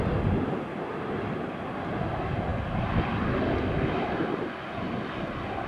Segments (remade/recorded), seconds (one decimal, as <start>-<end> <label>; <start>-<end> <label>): 0.0-5.7 recorded